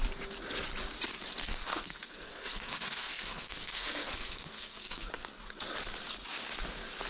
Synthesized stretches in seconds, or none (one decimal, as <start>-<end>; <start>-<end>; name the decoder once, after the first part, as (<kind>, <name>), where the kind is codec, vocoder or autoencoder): 1.4-5.1 (codec, SNAC)